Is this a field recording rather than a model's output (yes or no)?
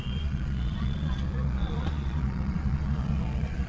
no